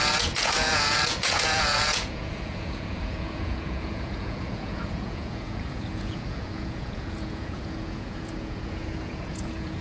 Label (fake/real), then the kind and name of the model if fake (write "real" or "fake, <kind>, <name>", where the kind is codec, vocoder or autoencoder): fake, vocoder, Vocos